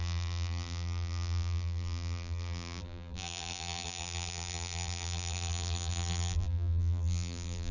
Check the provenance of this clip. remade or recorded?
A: remade